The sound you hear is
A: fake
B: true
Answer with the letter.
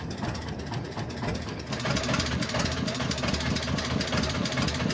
A